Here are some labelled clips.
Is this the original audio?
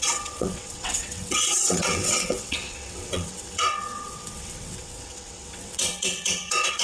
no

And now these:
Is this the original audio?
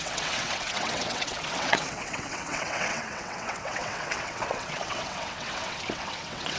no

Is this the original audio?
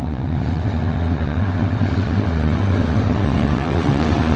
no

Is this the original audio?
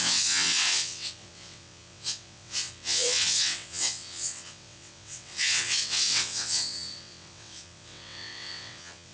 no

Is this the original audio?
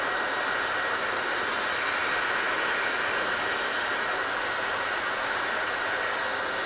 yes